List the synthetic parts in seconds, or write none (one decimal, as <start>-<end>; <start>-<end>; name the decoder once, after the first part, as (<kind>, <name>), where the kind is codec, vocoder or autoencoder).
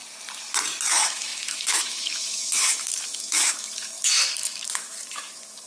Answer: 0.9-5.7 (autoencoder, DAC-VAE)